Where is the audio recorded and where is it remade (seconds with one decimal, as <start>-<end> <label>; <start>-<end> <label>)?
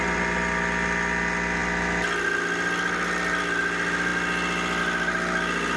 0.0-5.8 recorded